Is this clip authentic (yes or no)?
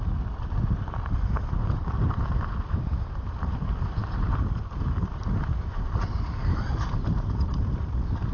no